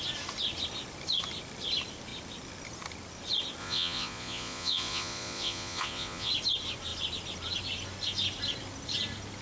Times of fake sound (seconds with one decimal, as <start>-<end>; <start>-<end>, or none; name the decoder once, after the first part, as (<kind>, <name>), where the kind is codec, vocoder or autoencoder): 3.6-6.3 (vocoder, Vocos)